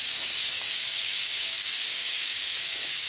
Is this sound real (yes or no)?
no